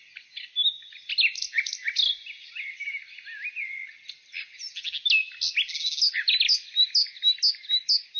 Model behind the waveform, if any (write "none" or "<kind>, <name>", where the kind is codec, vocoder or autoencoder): none